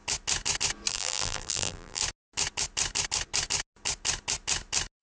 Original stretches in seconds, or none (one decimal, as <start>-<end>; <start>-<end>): 0.0-0.9; 2.0-5.0